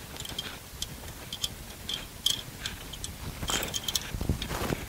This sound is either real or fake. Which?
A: real